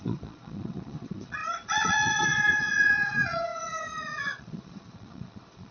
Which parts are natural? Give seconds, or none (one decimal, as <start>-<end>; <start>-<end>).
none